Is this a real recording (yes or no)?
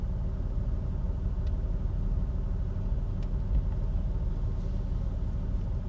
yes